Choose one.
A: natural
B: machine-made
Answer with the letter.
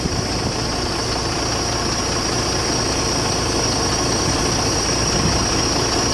A